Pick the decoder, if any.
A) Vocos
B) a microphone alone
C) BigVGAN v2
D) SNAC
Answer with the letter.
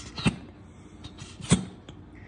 B